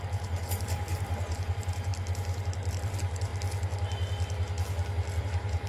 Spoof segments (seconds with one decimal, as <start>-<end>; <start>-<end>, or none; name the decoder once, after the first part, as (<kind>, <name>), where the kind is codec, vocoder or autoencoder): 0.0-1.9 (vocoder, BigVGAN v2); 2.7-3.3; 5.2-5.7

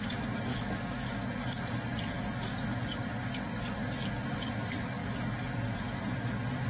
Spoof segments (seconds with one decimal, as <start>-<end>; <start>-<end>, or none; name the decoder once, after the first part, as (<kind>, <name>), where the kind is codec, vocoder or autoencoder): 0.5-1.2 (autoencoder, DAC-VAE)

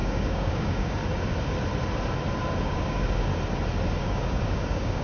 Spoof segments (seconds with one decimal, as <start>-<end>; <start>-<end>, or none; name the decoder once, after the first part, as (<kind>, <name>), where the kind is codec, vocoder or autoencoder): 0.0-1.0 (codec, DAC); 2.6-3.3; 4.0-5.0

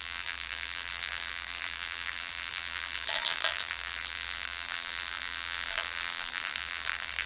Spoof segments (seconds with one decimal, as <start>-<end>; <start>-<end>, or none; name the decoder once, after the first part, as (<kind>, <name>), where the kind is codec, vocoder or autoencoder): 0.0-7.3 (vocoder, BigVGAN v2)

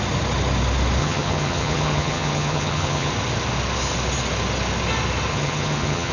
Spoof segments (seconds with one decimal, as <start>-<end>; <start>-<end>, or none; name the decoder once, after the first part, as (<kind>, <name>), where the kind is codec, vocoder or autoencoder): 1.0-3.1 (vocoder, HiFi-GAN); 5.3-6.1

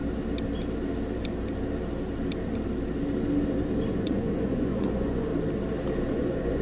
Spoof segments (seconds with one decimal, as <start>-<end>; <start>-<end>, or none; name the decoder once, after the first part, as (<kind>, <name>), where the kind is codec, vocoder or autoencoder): 3.9-5.3 (vocoder, Vocos); 6.1-6.6